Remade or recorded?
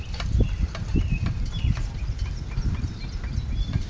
remade